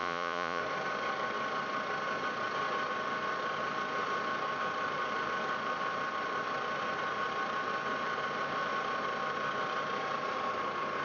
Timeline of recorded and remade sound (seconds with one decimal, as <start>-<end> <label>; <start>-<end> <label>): 0.0-0.6 remade; 0.6-11.0 recorded